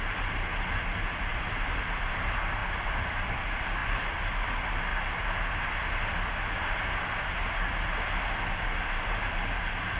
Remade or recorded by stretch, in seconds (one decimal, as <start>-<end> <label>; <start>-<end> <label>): 0.0-1.3 recorded; 1.3-1.8 remade; 1.8-2.6 recorded; 2.6-3.4 remade; 3.4-3.8 recorded; 3.8-4.5 remade; 4.5-10.0 recorded